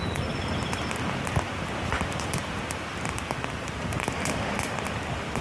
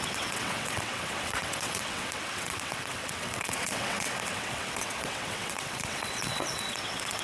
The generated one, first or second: second